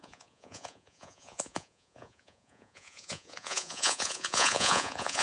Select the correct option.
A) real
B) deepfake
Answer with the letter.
B